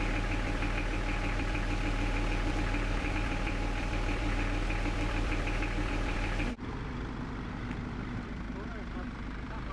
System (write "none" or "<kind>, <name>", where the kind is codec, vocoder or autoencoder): vocoder, BigVGAN v2